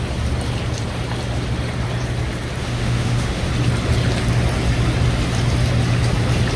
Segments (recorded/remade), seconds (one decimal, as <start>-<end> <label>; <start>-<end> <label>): 0.0-2.6 recorded; 2.6-3.5 remade; 3.5-6.6 recorded